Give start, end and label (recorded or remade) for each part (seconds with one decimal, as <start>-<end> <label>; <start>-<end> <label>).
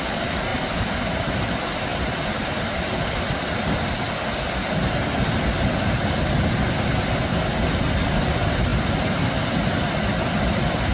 0.0-0.5 recorded; 0.5-1.2 remade; 1.2-1.9 recorded; 1.9-5.3 remade; 5.3-10.9 recorded